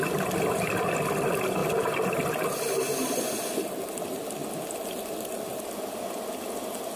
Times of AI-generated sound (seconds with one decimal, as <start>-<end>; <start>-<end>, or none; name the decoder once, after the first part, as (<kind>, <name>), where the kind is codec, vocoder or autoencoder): none